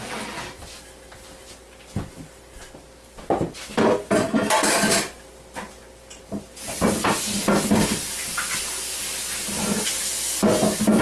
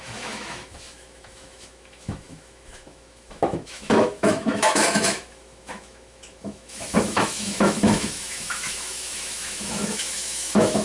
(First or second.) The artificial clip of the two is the second